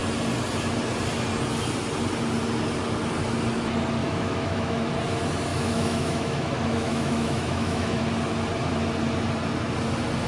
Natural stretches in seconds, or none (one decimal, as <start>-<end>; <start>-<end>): 0.0-4.0; 4.9-5.5; 8.0-10.3